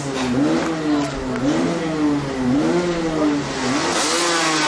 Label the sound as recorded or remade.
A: recorded